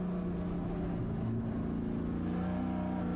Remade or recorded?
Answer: recorded